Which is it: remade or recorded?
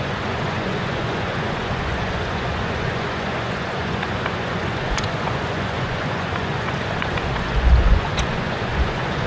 remade